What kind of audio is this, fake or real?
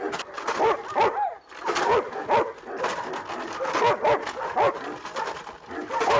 real